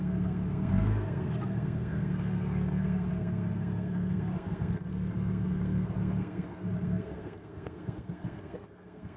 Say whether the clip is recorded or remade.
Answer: remade